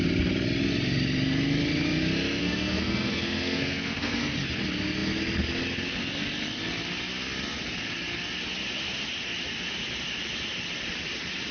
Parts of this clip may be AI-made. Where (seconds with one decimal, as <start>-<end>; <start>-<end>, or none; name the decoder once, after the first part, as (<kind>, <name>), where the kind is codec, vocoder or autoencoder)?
2.4-4.2 (codec, SNAC)